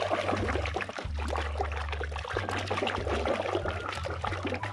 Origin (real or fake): real